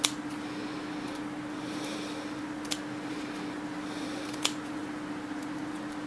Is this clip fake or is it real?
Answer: real